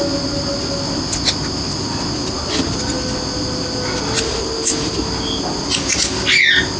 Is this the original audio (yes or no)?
yes